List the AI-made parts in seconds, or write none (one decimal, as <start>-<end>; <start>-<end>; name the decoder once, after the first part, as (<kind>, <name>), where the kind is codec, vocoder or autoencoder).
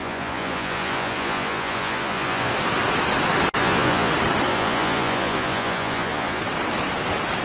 0.0-2.5 (vocoder, Vocos); 3.6-4.1; 4.5-6.4